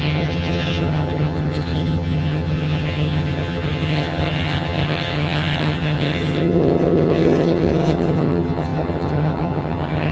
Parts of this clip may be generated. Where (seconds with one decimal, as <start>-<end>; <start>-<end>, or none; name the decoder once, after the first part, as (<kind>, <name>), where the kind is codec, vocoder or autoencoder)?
0.0-10.1 (vocoder, HiFi-GAN)